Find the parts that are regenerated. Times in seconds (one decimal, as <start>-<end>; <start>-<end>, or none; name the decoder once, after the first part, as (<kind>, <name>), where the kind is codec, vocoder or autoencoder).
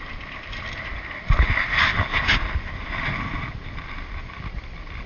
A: none